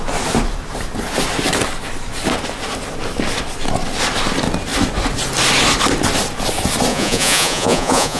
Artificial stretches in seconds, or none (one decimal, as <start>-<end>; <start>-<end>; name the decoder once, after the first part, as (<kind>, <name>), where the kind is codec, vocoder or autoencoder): 6.9-8.2 (vocoder, Vocos)